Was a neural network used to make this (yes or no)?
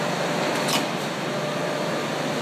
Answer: no